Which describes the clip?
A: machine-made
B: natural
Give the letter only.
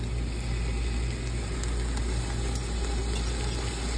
B